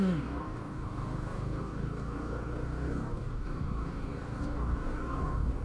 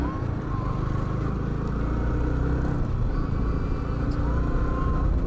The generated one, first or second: first